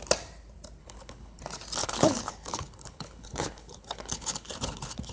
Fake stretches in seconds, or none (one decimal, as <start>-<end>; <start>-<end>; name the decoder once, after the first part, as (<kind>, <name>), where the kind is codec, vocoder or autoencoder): 0.8-1.4 (codec, HILCodec); 1.8-5.1